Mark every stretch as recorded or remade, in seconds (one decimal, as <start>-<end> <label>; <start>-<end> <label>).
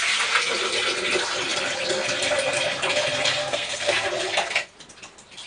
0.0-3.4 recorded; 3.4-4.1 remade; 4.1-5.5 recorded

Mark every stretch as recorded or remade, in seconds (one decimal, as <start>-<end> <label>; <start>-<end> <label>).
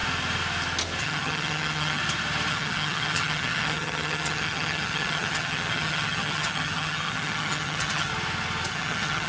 0.0-1.0 recorded; 1.0-2.0 remade; 2.0-2.5 recorded; 2.5-8.1 remade; 8.1-8.7 recorded; 8.7-9.3 remade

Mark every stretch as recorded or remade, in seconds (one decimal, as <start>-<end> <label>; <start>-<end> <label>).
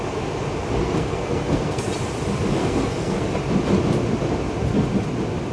0.0-0.8 recorded; 0.8-1.9 remade; 1.9-2.6 recorded; 2.6-3.3 remade; 3.3-5.5 recorded